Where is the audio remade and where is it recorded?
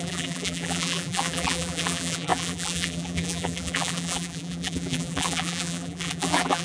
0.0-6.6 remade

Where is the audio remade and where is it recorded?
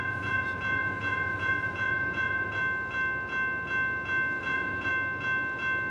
0.0-2.6 remade; 2.6-4.4 recorded; 4.4-4.9 remade; 4.9-5.9 recorded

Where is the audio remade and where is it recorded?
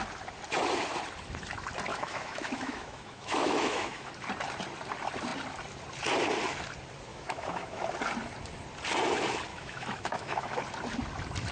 0.0-1.9 recorded; 1.9-4.1 remade; 4.1-7.1 recorded; 7.1-7.8 remade; 7.8-9.5 recorded; 9.5-10.6 remade; 10.6-11.5 recorded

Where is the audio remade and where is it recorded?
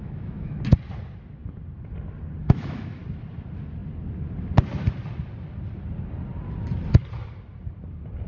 0.0-0.6 remade; 0.6-2.4 recorded; 2.4-3.0 remade; 3.0-8.3 recorded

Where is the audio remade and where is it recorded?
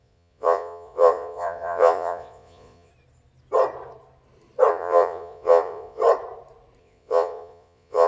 0.0-2.9 remade; 2.9-4.7 recorded; 4.7-6.0 remade; 6.0-6.8 recorded; 6.8-8.1 remade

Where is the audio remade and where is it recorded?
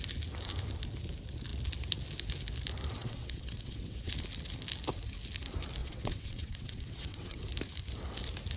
0.0-3.0 recorded; 3.0-4.1 remade; 4.1-5.8 recorded; 5.8-7.4 remade; 7.4-8.6 recorded